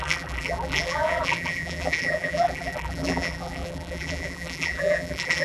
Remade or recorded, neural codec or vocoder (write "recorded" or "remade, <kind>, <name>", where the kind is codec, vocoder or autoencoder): remade, vocoder, BigVGAN v2